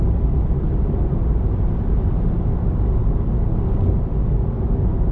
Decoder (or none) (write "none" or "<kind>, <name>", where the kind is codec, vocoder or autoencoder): none